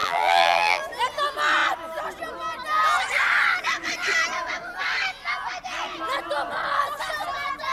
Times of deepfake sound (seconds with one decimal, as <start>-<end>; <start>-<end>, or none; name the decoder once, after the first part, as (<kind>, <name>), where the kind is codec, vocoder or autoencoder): 0.0-0.8 (vocoder, BigVGAN v2)